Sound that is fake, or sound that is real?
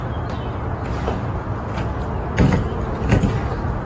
real